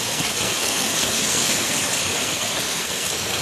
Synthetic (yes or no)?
yes